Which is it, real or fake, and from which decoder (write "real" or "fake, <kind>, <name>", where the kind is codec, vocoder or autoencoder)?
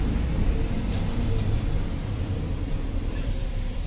fake, vocoder, BigVGAN v2